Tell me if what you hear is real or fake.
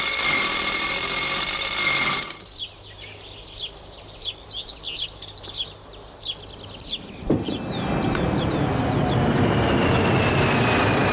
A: real